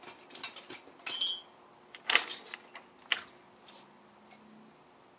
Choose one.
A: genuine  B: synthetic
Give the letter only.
A